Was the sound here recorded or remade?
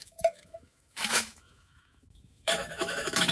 remade